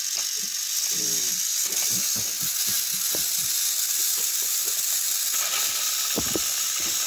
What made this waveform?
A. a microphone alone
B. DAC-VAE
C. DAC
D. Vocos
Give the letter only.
A